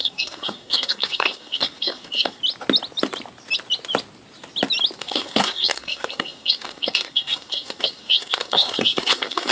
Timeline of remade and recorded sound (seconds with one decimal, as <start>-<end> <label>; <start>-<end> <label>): 0.0-2.4 remade; 2.4-5.0 recorded; 5.0-9.5 remade